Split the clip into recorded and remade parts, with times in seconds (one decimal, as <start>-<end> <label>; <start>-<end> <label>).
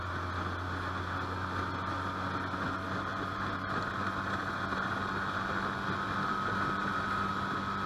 0.0-3.1 recorded; 3.1-3.9 remade; 3.9-6.8 recorded; 6.8-7.3 remade; 7.3-7.9 recorded